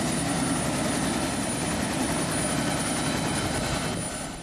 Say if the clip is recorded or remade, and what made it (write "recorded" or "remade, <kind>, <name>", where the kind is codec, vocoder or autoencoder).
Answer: recorded